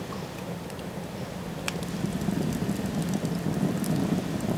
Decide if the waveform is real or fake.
real